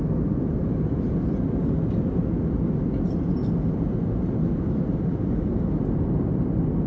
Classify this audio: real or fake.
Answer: real